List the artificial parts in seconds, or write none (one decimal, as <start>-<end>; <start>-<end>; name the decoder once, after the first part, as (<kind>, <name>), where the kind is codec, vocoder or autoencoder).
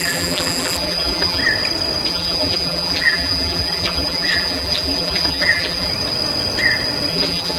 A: 0.0-1.4 (vocoder, BigVGAN v2); 2.1-5.9; 7.1-7.6